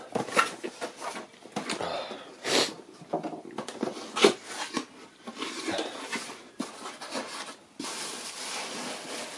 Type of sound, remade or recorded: recorded